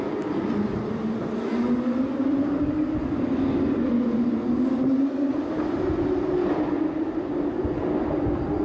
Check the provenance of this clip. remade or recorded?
recorded